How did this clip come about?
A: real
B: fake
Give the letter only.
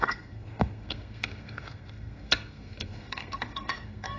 B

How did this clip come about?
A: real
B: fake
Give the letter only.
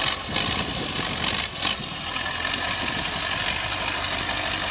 A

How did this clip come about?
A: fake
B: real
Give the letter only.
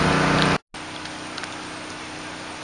B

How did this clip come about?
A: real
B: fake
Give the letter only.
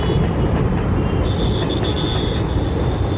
A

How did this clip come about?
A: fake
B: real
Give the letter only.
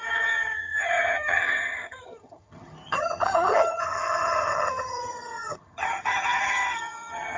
A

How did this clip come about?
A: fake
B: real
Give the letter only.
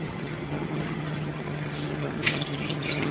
A